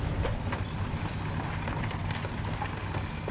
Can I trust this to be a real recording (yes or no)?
yes